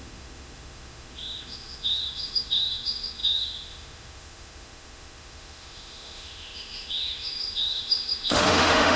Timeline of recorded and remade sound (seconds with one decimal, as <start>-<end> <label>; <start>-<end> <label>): 0.0-9.0 remade